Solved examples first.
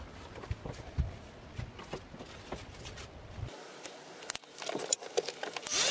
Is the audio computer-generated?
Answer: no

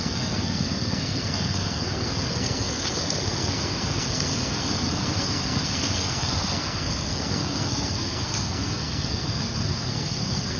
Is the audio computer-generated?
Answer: yes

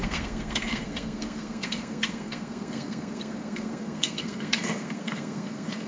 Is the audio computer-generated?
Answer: yes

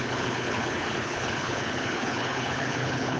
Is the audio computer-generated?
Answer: yes